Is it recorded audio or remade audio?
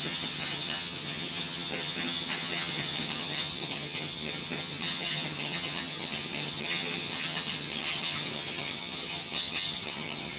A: remade